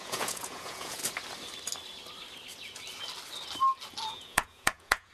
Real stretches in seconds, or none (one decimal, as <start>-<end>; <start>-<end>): 1.0-4.1